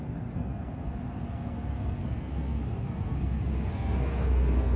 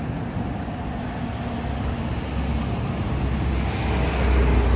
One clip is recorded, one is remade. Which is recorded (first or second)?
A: second